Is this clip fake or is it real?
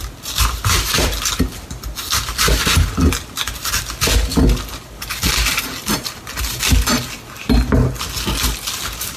real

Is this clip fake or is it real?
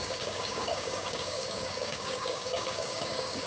fake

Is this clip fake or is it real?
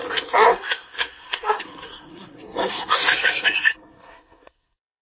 fake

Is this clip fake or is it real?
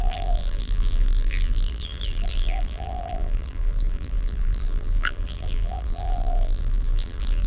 fake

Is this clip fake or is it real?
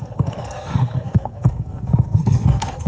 fake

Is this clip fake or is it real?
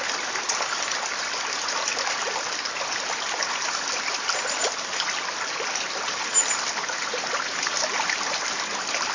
real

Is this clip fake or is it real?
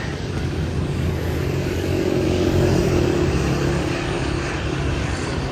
fake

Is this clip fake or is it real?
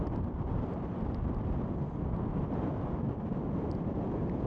real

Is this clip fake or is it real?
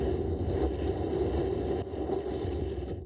real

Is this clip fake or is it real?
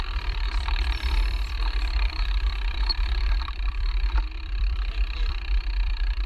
fake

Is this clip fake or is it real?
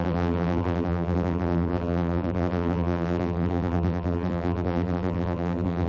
fake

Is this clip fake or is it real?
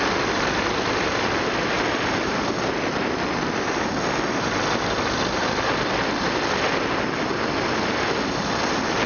real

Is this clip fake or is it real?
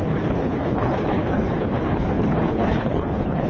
fake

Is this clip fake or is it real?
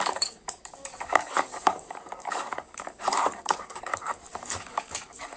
fake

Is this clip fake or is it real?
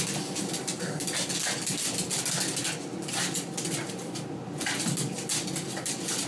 real